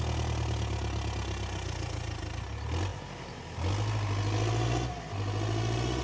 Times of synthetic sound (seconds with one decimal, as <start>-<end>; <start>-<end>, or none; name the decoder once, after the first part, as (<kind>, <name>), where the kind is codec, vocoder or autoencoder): none